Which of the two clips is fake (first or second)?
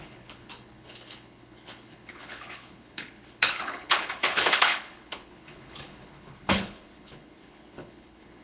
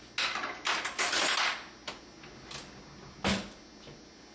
first